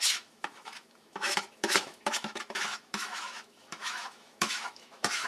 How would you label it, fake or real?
fake